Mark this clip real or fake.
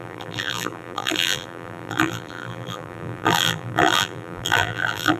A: fake